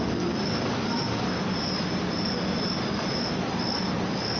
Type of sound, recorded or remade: recorded